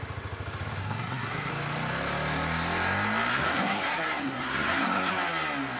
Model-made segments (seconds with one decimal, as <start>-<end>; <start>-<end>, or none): 0.8-1.5; 3.3-5.1